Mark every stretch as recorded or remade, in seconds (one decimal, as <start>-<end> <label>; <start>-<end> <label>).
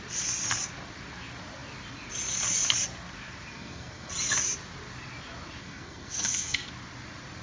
0.0-3.5 recorded; 3.5-4.1 remade; 4.1-5.6 recorded; 5.6-6.7 remade; 6.7-7.4 recorded